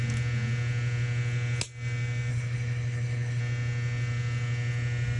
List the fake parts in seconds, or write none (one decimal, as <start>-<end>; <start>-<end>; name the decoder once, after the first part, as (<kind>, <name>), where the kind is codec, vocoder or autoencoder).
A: 2.3-3.4 (codec, HILCodec)